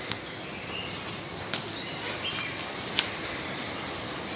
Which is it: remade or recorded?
recorded